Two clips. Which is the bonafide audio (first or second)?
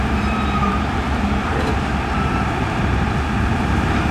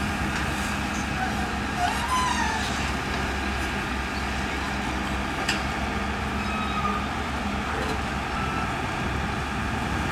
second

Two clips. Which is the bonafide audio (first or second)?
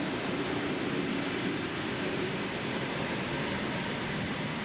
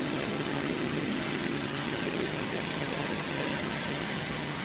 first